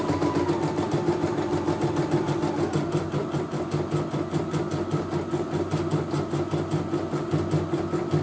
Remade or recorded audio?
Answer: recorded